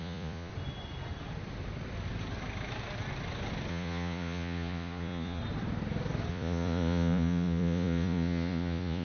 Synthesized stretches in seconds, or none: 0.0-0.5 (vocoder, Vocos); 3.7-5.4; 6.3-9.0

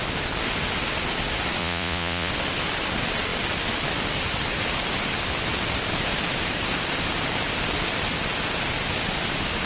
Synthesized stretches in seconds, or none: 1.6-2.3 (vocoder, Vocos)

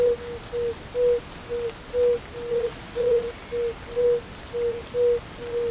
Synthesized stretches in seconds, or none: 2.5-3.3 (vocoder, Vocos)

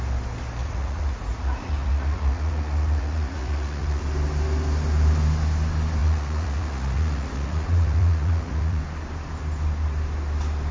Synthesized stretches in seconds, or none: 0.6-4.0 (vocoder, Vocos); 6.0-8.8

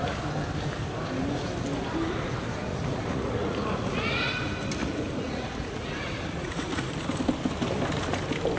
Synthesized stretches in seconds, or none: 2.7-4.3 (vocoder, Vocos); 4.8-6.9

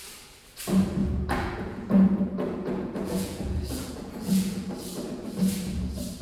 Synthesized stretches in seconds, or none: 1.0-4.7 (vocoder, Vocos)

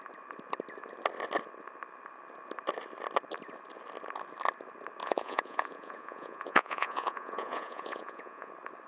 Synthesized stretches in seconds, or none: 5.0-8.5 (vocoder, Vocos)

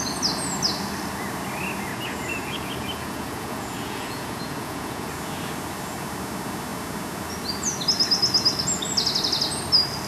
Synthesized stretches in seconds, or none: 1.9-5.1 (vocoder, Vocos)